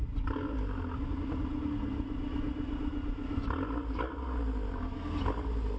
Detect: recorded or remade recorded